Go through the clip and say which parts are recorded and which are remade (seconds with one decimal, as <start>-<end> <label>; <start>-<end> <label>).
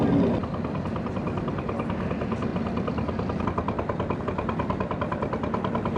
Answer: 0.0-0.4 recorded; 0.4-1.1 remade; 1.1-2.5 recorded; 2.5-4.2 remade; 4.2-6.0 recorded